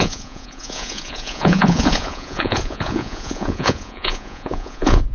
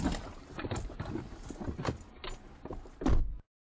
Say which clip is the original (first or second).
second